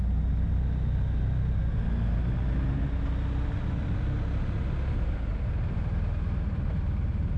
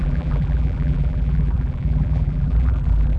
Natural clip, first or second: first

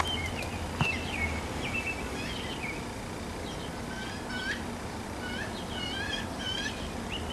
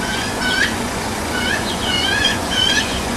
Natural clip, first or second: first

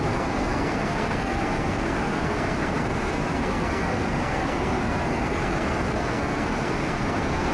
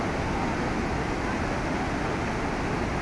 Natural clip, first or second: second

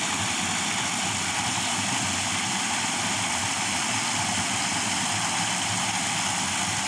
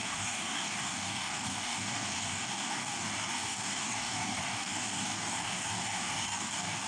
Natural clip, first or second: first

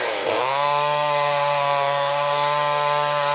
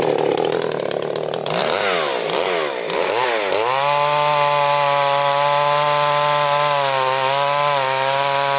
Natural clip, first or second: second